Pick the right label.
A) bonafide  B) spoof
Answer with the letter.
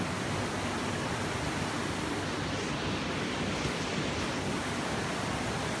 A